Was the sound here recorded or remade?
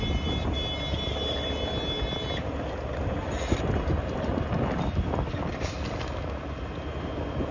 recorded